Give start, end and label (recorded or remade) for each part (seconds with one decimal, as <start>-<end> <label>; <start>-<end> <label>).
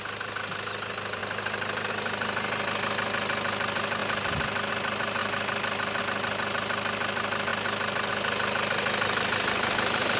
0.0-4.0 recorded; 4.0-4.7 remade; 4.7-5.2 recorded; 5.2-6.0 remade; 6.0-10.2 recorded